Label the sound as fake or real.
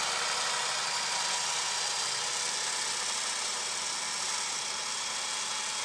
real